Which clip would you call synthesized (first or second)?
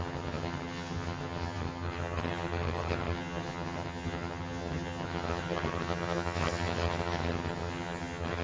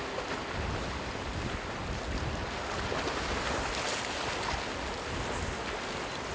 first